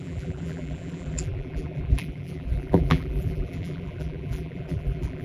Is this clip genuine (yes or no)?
no